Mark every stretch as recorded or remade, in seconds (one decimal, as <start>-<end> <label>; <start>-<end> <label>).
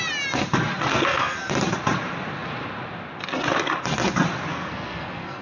0.0-0.9 recorded; 0.9-1.5 remade; 1.5-4.5 recorded; 4.5-5.4 remade